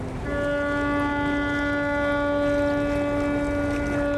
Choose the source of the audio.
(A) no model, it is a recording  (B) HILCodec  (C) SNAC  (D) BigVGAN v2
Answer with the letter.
A